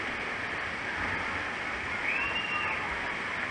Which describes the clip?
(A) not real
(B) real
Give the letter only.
B